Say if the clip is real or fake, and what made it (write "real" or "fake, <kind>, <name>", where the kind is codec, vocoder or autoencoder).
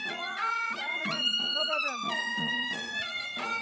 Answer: fake, vocoder, Vocos